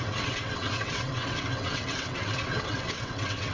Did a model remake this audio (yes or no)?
yes